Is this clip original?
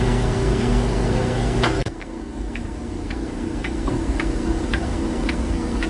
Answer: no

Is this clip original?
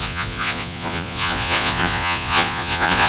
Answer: no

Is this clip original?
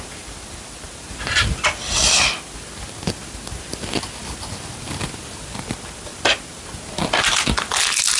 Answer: yes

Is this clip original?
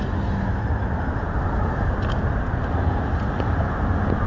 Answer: yes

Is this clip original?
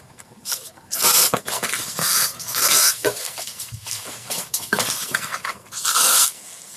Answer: no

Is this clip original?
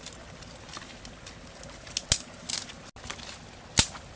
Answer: yes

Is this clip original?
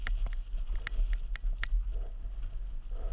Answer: yes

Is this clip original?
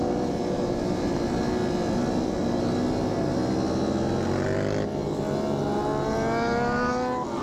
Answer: yes